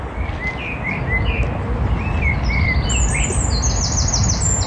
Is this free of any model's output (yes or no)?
yes